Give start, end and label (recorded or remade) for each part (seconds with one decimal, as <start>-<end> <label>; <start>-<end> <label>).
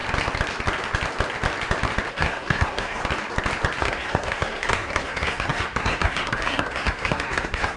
0.0-2.1 recorded; 2.1-3.0 remade; 3.0-3.8 recorded; 3.8-7.8 remade